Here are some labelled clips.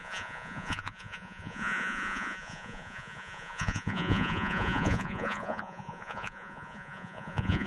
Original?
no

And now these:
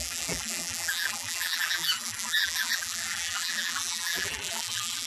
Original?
no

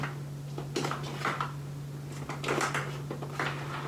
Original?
yes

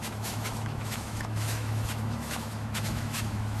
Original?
no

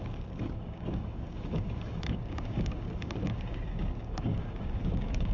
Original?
no